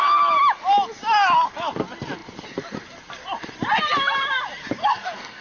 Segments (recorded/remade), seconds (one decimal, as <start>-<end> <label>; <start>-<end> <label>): 0.0-4.8 recorded; 4.8-5.4 remade